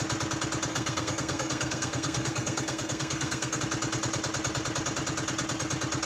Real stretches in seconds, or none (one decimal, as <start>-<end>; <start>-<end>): 0.0-0.7; 3.6-6.1